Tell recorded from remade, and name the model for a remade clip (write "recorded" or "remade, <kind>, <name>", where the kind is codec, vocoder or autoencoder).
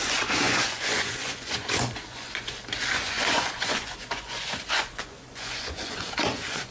remade, vocoder, Vocos